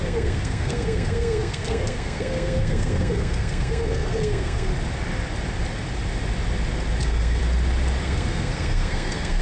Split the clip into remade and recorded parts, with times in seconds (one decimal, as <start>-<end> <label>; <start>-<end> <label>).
0.0-4.7 remade; 4.7-7.0 recorded; 7.0-7.4 remade; 7.4-8.0 recorded; 8.0-9.4 remade